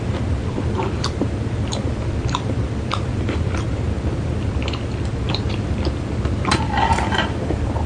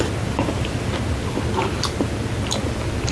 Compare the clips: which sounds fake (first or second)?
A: first